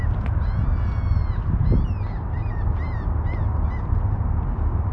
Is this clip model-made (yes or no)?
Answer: no